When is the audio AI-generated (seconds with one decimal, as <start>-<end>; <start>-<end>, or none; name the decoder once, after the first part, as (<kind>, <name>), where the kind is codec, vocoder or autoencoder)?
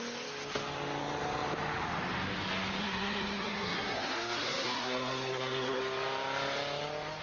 2.8-5.8 (codec, SNAC)